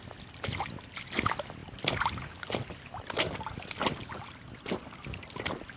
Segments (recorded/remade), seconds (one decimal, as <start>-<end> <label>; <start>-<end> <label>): 0.0-5.8 recorded